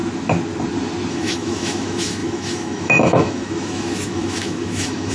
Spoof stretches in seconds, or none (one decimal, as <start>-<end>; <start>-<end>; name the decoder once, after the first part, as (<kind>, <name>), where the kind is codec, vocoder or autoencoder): 1.1-5.1 (autoencoder, DAC-VAE)

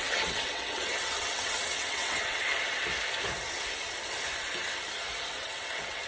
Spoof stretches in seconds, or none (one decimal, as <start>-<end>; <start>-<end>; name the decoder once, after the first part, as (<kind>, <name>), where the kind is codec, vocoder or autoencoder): 0.0-2.5 (vocoder, WaveNeXt); 5.3-6.1

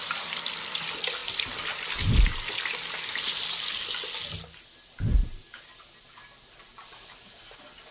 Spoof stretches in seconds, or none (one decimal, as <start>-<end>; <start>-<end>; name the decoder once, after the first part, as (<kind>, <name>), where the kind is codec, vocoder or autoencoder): none

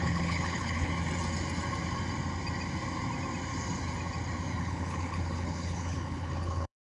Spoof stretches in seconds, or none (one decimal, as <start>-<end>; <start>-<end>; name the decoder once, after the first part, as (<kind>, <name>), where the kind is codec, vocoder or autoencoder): 0.0-0.9 (codec, HILCodec); 4.6-7.0